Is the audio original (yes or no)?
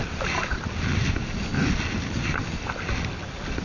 yes